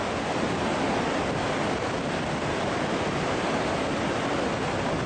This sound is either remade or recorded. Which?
recorded